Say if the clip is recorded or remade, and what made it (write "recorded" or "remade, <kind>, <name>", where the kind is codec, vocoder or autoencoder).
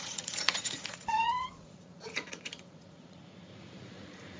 remade, vocoder, Vocos